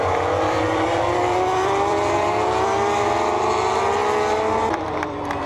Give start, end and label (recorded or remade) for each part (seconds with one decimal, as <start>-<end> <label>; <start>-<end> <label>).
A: 0.0-4.0 remade; 4.0-4.6 recorded; 4.6-5.5 remade